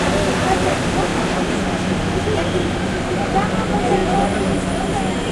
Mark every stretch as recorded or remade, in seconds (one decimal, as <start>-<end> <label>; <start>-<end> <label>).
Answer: 0.0-5.3 recorded